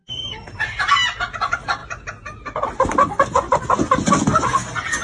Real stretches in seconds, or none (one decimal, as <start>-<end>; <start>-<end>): 0.8-5.0